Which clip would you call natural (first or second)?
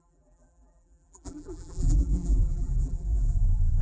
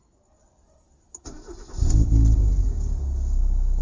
second